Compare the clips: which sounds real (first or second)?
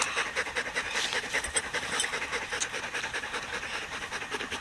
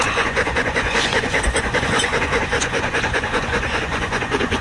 first